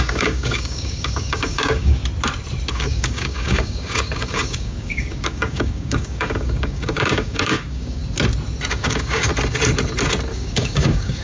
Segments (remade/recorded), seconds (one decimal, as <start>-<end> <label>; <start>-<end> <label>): 0.0-2.0 remade; 2.0-2.7 recorded; 2.7-8.0 remade; 8.0-8.7 recorded; 8.7-9.3 remade; 9.3-10.3 recorded; 10.3-11.2 remade